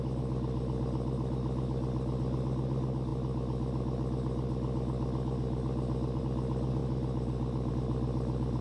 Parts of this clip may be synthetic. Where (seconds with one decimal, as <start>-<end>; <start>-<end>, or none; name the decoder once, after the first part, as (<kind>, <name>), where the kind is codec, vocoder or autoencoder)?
none